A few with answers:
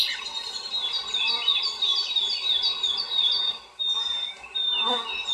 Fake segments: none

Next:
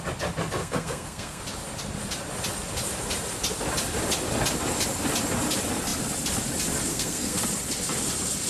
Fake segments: 0.6-1.4 (codec, SNAC); 6.9-7.4

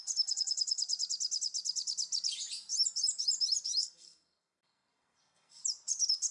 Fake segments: 3.8-5.6 (codec, SNAC)